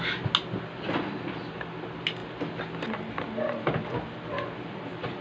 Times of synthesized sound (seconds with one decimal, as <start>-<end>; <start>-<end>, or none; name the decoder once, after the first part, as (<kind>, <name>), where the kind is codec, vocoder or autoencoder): none